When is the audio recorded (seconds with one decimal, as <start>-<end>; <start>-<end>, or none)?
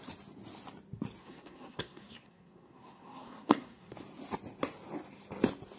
0.0-1.2; 3.9-5.8